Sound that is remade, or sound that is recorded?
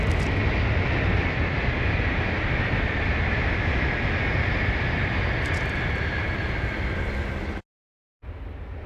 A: recorded